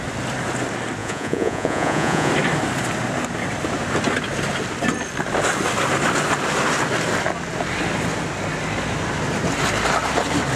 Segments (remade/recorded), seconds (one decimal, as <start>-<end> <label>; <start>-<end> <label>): 0.0-1.0 recorded; 1.0-2.3 remade; 2.3-10.6 recorded